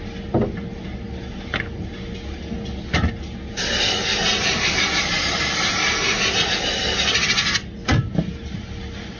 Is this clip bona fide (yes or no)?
yes